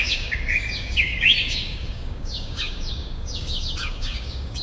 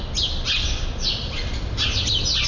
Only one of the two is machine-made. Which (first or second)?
first